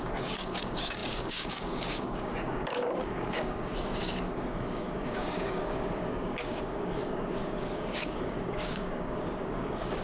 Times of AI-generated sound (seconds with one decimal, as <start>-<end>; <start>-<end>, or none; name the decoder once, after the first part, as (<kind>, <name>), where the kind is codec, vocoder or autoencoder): 0.0-10.0 (codec, DAC)